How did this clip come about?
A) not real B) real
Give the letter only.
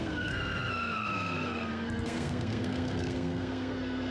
A